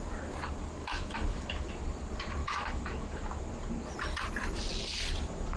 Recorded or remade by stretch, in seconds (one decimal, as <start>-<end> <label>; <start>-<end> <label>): 0.0-0.8 recorded; 0.8-1.7 remade; 1.7-2.4 recorded; 2.4-3.4 remade; 3.4-5.6 recorded